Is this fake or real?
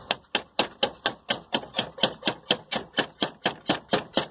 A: real